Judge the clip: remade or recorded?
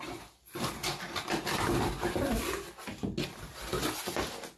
recorded